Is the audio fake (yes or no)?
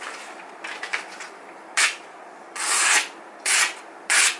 yes